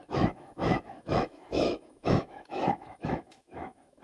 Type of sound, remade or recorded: remade